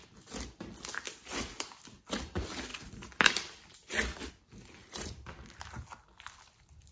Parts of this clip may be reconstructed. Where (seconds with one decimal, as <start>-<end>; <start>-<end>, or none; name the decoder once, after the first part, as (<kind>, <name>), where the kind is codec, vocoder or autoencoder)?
2.7-4.3 (vocoder, BigVGAN v2); 4.8-5.5